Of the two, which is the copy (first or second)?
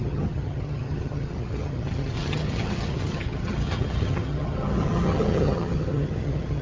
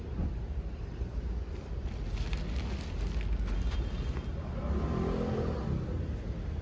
first